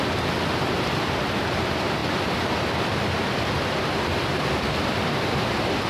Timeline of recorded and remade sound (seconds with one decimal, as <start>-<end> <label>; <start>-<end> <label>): 0.0-5.9 recorded